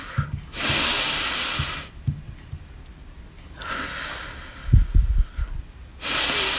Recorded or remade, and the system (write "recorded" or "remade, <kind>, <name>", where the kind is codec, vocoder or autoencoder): recorded